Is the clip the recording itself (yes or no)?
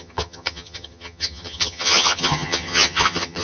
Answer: no